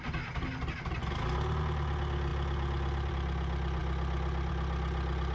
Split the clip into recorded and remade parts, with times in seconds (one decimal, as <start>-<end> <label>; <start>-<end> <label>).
0.0-5.3 recorded